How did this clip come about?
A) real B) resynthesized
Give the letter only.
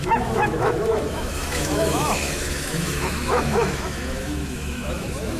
B